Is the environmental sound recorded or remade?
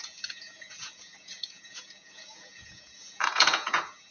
remade